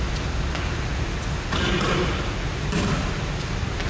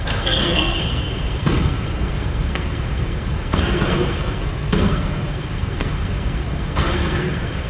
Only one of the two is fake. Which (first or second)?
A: second